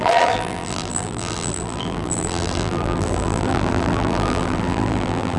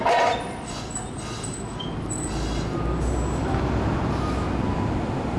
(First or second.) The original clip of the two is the second